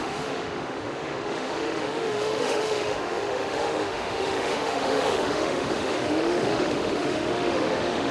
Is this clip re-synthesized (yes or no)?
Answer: yes